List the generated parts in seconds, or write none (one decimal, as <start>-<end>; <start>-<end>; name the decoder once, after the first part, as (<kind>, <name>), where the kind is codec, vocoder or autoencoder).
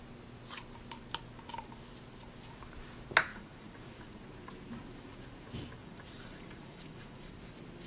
3.3-4.2 (vocoder, Vocos); 5.8-7.3